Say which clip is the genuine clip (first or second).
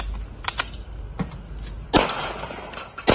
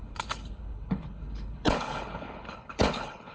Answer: first